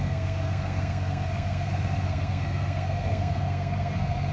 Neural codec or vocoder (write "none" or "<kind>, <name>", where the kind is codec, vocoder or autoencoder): codec, SNAC